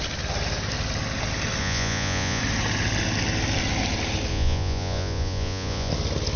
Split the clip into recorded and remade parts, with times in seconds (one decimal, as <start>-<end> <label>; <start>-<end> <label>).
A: 0.0-1.6 recorded; 1.6-2.4 remade; 2.4-4.3 recorded; 4.3-5.9 remade; 5.9-6.4 recorded